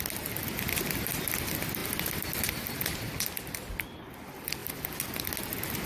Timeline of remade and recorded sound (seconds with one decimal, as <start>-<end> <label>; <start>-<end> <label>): 0.0-5.9 recorded